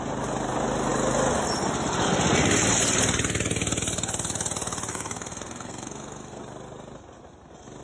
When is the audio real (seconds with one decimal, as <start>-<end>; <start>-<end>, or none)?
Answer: 0.0-4.9; 6.4-7.8